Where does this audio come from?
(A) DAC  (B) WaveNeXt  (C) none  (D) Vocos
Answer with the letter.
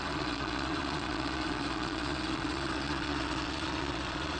D